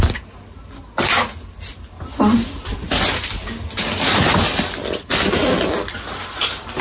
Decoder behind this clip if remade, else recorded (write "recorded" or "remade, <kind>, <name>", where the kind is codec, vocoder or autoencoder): recorded